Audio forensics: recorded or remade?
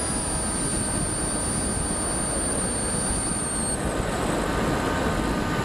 recorded